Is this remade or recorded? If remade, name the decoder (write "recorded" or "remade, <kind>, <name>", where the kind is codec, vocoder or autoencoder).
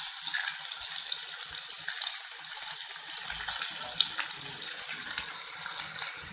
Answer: recorded